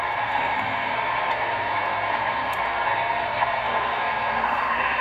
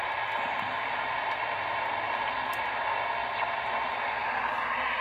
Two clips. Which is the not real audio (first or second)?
first